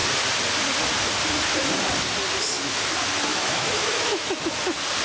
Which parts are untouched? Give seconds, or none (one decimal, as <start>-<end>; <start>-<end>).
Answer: 0.0-3.3; 4.4-5.0